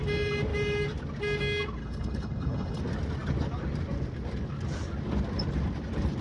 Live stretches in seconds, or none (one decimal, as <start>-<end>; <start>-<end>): 0.0-1.8; 2.8-6.2